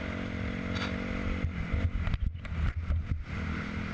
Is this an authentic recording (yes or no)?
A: yes